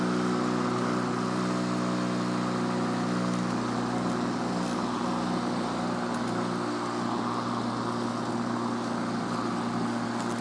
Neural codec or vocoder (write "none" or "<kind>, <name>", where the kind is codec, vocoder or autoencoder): none